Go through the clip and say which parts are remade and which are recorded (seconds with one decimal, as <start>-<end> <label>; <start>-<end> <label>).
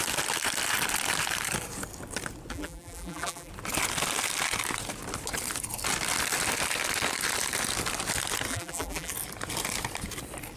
0.0-2.5 recorded; 2.5-3.5 remade; 3.5-8.5 recorded; 8.5-9.1 remade; 9.1-10.6 recorded